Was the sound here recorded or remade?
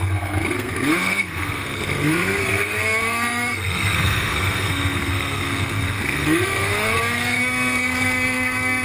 remade